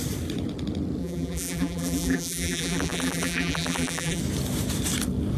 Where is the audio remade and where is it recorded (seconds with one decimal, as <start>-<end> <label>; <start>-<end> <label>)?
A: 0.0-1.0 recorded; 1.0-4.2 remade; 4.2-5.4 recorded